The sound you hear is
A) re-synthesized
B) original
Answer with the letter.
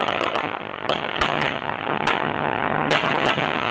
A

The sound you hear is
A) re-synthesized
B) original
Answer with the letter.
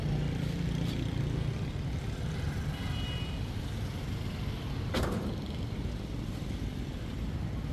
B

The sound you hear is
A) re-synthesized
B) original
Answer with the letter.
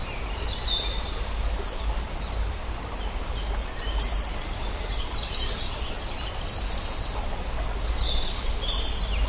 B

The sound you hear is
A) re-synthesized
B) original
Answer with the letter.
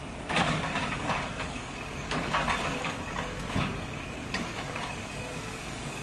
A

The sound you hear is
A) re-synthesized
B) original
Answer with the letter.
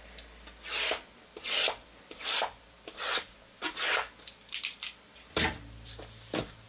B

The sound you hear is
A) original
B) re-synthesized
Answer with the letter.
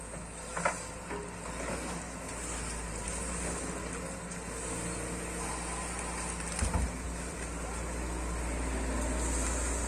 A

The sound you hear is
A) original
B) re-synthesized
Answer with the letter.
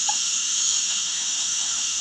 B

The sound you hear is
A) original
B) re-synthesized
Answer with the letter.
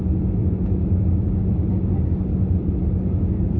A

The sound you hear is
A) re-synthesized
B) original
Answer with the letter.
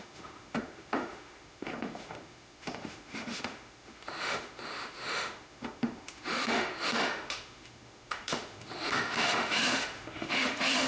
A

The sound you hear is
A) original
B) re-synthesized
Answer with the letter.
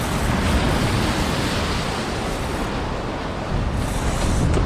A